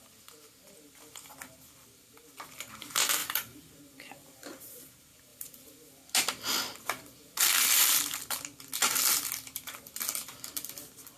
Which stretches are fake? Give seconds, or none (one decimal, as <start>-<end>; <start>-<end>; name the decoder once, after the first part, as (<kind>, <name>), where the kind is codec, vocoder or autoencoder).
3.2-3.8 (vocoder, BigVGAN v2); 4.2-4.8